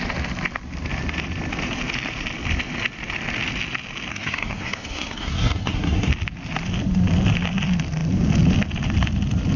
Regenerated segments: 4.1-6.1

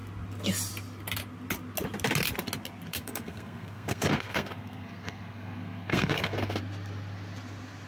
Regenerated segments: 2.9-6.6

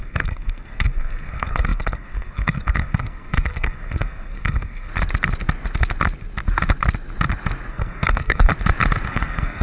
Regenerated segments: 0.0-4.9; 7.7-8.5; 9.1-9.6

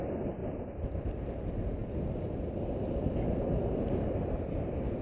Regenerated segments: none

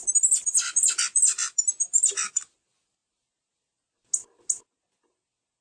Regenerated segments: none